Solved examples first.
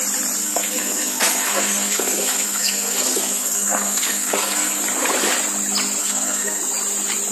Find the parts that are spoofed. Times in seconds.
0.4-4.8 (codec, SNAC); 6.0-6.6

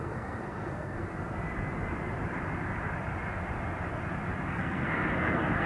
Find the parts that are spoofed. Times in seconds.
0.0-1.1 (codec, SNAC); 4.5-5.7

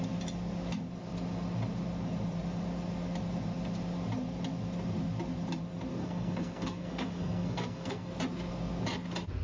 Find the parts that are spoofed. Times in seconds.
6.0-8.1 (codec, SNAC)

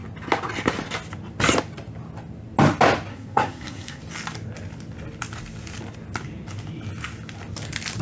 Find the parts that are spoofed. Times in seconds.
3.1-4.0 (codec, SNAC)

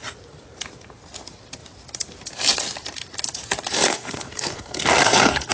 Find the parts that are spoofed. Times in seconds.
3.7-5.5 (codec, SNAC)

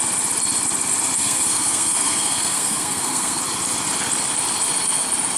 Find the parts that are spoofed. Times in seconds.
1.2-3.4 (codec, SNAC)

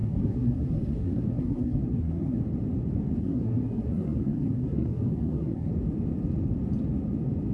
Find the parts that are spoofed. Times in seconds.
0.0-2.4 (codec, SNAC); 3.2-5.7

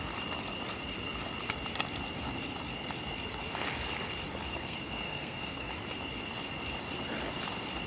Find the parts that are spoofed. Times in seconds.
4.5-5.7 (codec, SNAC)